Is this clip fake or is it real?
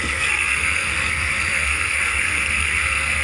fake